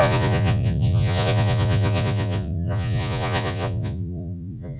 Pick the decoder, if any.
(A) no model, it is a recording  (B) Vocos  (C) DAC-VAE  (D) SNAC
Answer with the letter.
B